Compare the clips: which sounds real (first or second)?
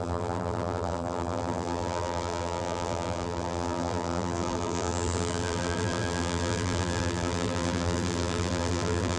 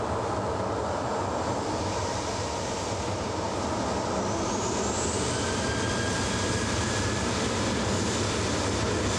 second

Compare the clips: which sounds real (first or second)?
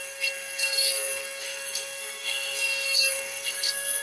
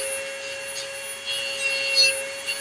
second